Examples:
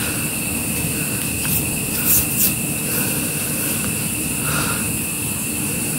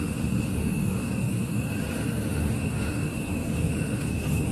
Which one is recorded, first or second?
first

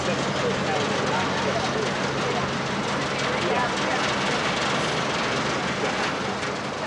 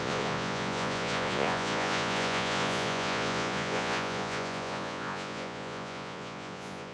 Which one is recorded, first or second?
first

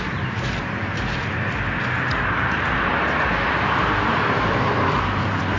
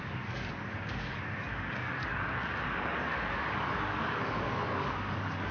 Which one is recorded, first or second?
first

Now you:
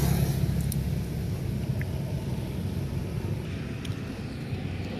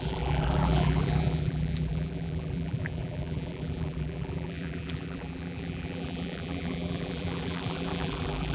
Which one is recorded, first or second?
first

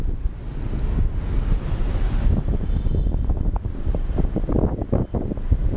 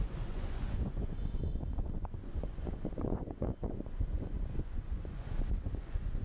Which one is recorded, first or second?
first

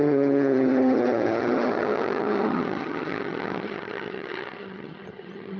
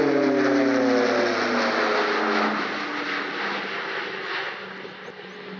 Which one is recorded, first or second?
second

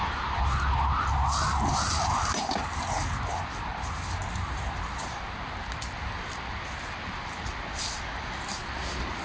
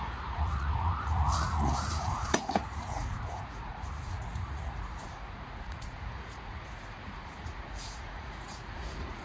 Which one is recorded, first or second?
first